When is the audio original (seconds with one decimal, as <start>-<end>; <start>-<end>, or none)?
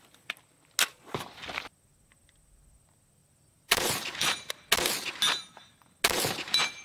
0.0-3.2; 4.5-6.8